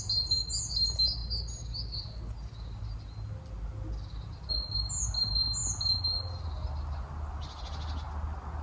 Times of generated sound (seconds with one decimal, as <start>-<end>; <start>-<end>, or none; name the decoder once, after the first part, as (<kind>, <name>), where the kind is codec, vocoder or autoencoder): none